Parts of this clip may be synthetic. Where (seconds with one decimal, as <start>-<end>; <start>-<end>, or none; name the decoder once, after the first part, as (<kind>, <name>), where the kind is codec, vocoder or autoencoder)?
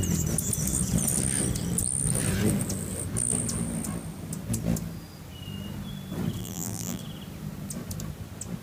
6.4-7.0 (vocoder, BigVGAN v2)